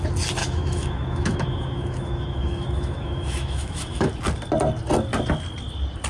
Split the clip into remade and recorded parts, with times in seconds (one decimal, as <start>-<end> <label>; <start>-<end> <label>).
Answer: 0.0-0.4 recorded; 0.4-4.1 remade; 4.1-6.1 recorded

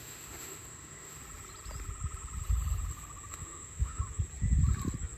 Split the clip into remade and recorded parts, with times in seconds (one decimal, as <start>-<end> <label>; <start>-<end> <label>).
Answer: 0.0-1.2 remade; 1.2-3.3 recorded; 3.3-4.0 remade; 4.0-5.2 recorded

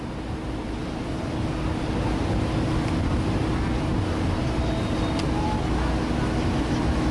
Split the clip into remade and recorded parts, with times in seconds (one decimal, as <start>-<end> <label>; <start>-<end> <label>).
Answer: 0.0-7.1 recorded

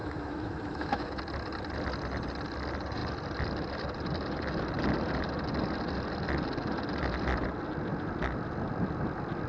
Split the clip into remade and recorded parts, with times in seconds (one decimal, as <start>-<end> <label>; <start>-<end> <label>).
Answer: 0.0-1.2 remade; 1.2-9.5 recorded